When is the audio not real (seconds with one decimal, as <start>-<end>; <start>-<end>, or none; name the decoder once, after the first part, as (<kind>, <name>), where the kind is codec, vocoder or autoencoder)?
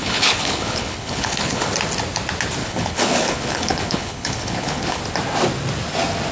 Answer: 0.0-1.7 (codec, HILCodec); 2.6-5.0